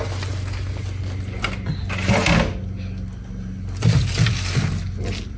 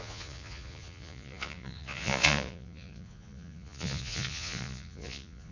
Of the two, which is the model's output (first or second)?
second